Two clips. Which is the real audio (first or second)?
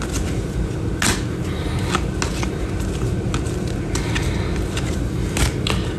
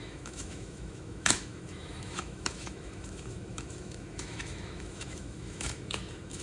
first